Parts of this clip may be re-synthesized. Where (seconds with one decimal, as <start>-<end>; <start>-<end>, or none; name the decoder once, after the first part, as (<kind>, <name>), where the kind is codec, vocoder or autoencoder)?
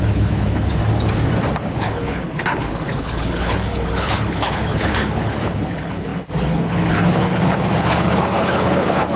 0.0-0.8 (codec, HILCodec); 1.7-9.2